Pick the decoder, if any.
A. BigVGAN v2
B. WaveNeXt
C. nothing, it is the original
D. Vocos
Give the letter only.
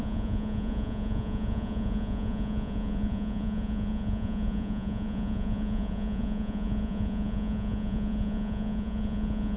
D